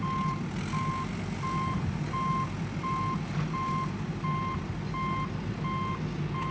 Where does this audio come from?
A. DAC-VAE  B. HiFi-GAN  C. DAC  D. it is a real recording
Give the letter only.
D